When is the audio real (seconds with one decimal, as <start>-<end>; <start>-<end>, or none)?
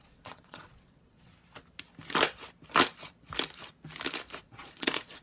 1.3-4.4